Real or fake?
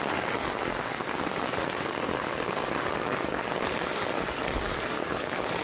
real